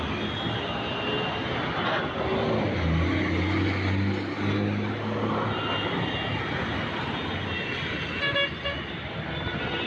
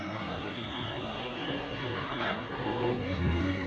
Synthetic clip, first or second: second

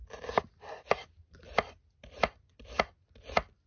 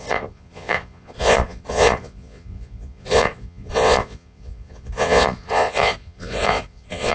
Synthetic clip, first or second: second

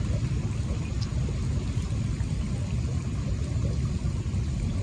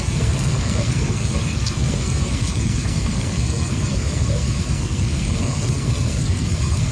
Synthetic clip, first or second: second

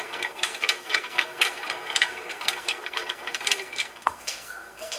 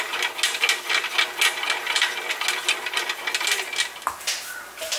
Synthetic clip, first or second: first